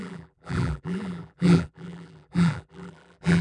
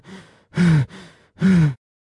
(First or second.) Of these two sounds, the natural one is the second